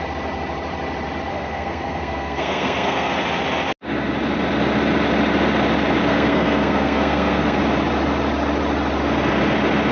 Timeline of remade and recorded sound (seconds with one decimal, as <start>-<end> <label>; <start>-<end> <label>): 0.0-1.3 recorded; 1.3-3.1 remade; 3.1-6.1 recorded; 6.1-7.6 remade; 7.6-9.9 recorded